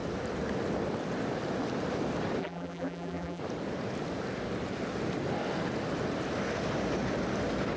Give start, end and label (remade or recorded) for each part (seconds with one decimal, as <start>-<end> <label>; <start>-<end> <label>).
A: 0.0-2.4 recorded; 2.4-3.4 remade; 3.4-7.8 recorded